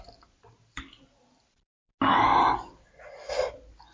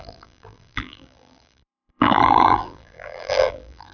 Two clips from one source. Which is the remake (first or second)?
second